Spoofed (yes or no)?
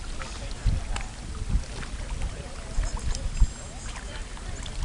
no